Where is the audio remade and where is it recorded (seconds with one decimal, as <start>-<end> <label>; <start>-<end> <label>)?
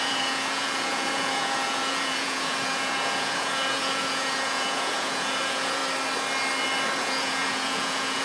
0.0-5.8 remade; 5.8-7.0 recorded; 7.0-8.2 remade